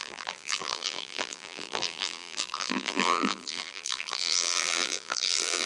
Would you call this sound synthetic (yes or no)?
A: yes